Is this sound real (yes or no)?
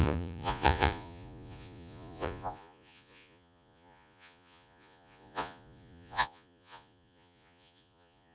no